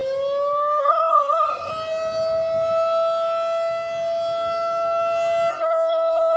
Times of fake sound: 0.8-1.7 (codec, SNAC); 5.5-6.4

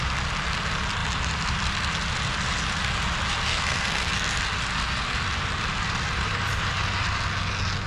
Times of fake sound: 3.5-4.1 (codec, SNAC)